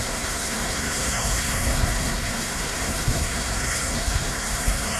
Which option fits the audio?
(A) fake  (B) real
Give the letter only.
A